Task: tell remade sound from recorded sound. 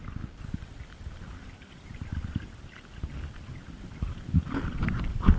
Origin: recorded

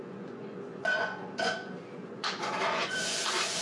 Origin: remade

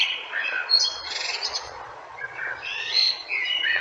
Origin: remade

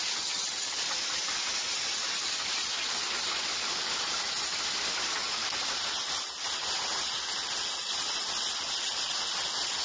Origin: recorded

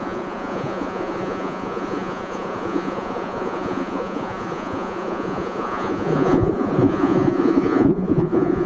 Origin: remade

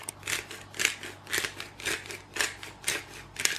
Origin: recorded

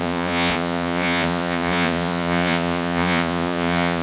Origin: remade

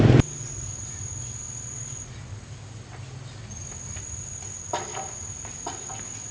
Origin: recorded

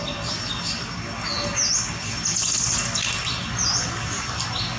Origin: recorded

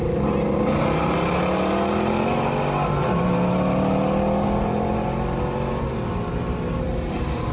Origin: recorded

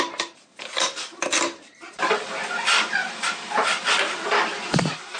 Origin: recorded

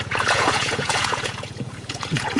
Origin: remade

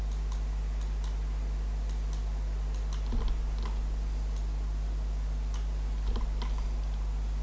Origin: recorded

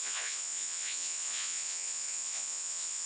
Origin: remade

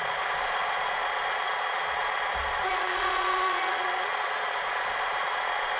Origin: remade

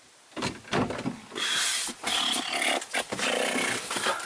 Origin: recorded